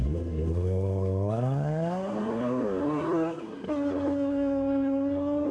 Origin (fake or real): fake